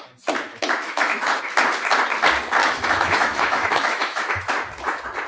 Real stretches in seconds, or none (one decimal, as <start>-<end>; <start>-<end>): 0.0-0.5; 1.4-2.6; 4.5-5.3